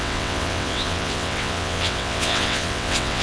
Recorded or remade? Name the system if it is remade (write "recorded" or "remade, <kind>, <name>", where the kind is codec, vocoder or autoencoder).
remade, vocoder, WaveNeXt